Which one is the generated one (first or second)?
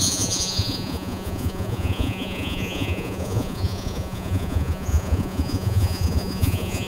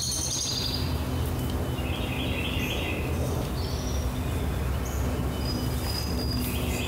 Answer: first